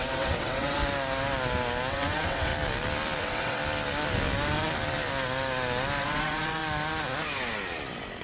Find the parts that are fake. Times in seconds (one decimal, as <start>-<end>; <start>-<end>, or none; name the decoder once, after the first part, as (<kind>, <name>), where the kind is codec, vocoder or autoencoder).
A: 0.0-0.8 (vocoder, WaveNeXt); 1.9-2.5; 3.2-3.6; 6.0-6.6